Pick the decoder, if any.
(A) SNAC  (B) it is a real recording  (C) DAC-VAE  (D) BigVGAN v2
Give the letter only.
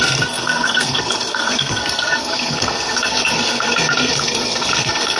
A